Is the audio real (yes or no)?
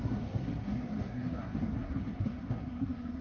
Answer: no